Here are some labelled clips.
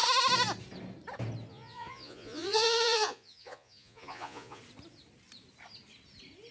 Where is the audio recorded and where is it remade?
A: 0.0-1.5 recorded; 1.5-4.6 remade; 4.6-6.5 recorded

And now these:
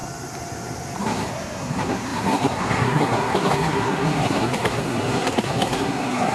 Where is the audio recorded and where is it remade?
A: 0.0-1.0 recorded; 1.0-6.3 remade

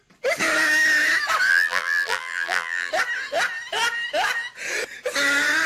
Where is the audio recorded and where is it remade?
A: 0.0-1.5 recorded; 1.5-2.9 remade; 2.9-5.7 recorded

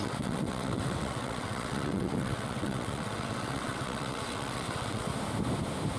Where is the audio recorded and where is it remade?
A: 0.0-5.1 remade; 5.1-6.0 recorded

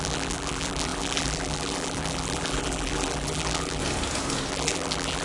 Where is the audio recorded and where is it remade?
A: 0.0-3.8 remade; 3.8-4.5 recorded; 4.5-5.2 remade

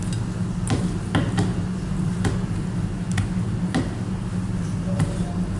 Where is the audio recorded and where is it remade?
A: 0.0-5.6 recorded

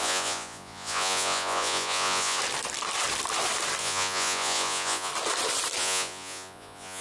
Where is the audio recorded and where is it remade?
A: 0.0-2.4 remade; 2.4-3.8 recorded; 3.8-5.1 remade; 5.1-5.8 recorded; 5.8-7.0 remade

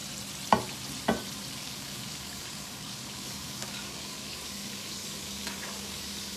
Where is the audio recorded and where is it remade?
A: 0.0-1.5 recorded; 1.5-6.4 remade